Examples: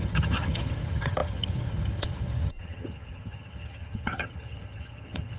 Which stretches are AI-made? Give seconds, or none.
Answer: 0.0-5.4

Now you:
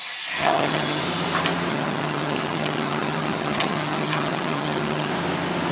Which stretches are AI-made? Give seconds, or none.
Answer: 0.4-1.0; 1.7-5.1

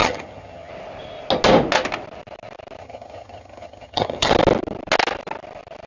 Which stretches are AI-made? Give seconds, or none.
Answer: 0.0-0.7; 2.8-4.3

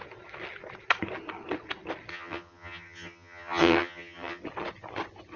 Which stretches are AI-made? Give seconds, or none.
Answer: 2.1-4.4

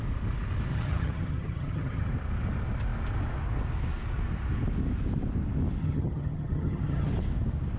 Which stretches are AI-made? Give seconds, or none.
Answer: 0.7-2.1; 5.8-7.1

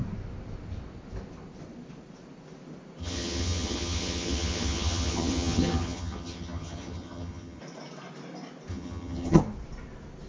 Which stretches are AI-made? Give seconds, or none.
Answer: 3.0-7.6; 8.7-9.4